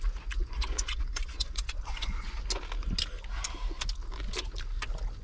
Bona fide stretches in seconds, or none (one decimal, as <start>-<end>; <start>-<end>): 0.0-0.4; 2.4-5.2